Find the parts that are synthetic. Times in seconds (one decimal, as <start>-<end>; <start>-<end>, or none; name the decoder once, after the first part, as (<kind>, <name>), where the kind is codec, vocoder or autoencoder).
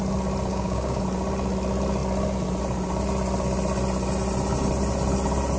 0.5-1.0 (codec, DAC)